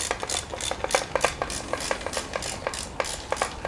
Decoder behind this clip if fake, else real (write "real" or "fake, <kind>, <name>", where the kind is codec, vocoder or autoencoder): real